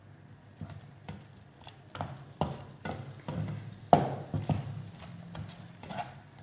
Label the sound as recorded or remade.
remade